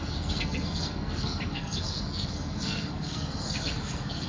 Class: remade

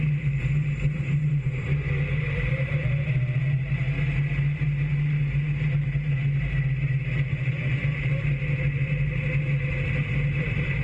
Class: recorded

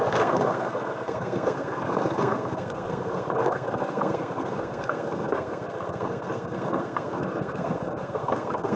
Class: remade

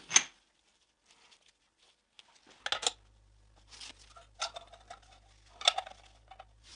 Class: recorded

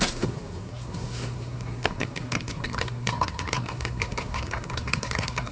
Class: remade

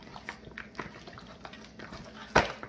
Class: recorded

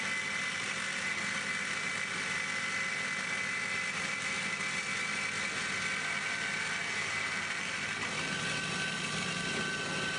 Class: recorded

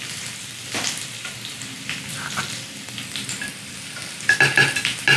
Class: recorded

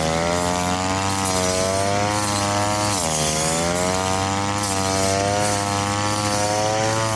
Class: recorded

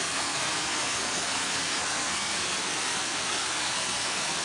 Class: remade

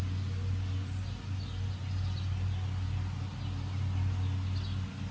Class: recorded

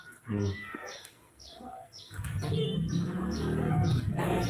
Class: remade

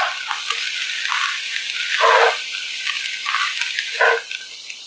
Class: recorded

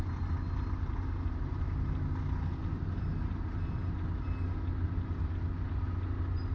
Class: recorded